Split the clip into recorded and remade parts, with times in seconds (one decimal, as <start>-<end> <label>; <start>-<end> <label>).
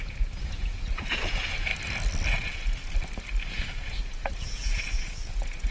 0.0-1.7 remade; 1.7-2.3 recorded; 2.3-2.8 remade; 2.8-3.5 recorded; 3.5-5.7 remade